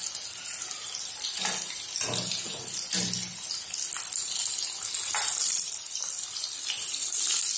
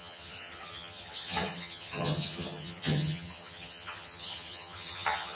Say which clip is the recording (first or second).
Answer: first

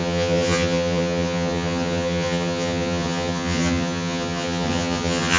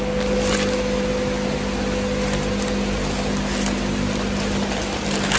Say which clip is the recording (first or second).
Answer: second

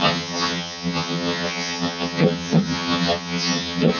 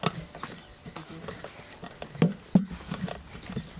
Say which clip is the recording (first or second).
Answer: second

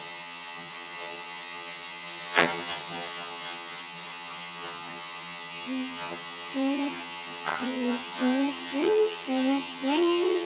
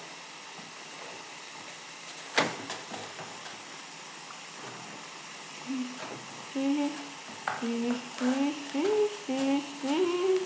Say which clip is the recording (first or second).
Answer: second